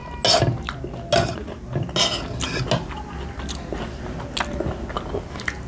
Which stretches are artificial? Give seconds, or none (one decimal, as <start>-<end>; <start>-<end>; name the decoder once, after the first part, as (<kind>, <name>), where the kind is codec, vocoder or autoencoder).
none